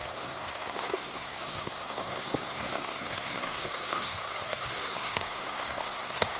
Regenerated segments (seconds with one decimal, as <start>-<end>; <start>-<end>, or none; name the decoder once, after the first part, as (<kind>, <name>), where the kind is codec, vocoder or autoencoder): 0.0-6.4 (codec, SNAC)